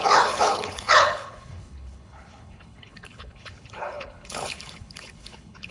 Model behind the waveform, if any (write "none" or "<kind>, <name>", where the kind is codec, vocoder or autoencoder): codec, HILCodec